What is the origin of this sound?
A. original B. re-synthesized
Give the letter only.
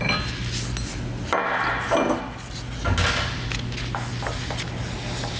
A